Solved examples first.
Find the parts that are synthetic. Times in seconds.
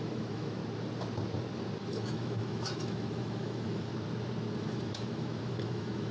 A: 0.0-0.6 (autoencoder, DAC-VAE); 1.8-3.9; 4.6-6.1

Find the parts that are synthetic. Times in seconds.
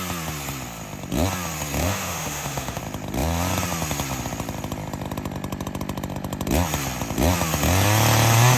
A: 1.8-2.8 (autoencoder, DAC-VAE)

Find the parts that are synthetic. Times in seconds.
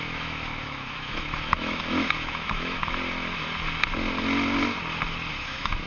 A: 0.0-2.8 (autoencoder, DAC-VAE); 5.3-5.9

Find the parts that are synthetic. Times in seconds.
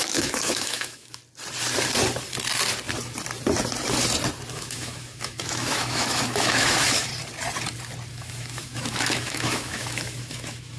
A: 0.0-1.2 (autoencoder, DAC-VAE); 4.5-7.1; 8.1-10.8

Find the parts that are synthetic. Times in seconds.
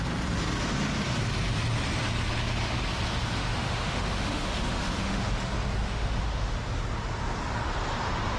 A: 3.4-5.3 (autoencoder, DAC-VAE); 5.8-6.5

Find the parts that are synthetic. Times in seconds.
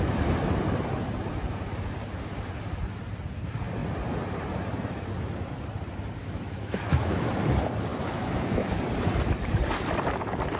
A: 6.2-7.3 (autoencoder, DAC-VAE); 7.9-8.8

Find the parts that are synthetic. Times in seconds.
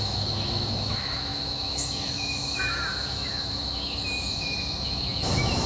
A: 0.0-5.7 (autoencoder, DAC-VAE)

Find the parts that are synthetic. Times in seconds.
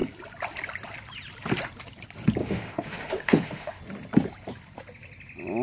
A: 2.4-3.8 (autoencoder, DAC-VAE)